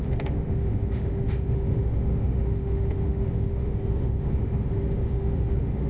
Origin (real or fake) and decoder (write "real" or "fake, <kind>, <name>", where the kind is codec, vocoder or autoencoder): fake, autoencoder, DAC-VAE